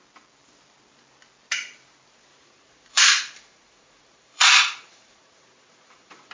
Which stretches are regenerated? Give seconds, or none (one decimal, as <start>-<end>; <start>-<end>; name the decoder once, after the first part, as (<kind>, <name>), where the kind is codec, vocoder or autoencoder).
2.3-3.1 (vocoder, Vocos); 3.5-6.3